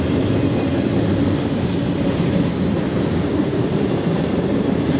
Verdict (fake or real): real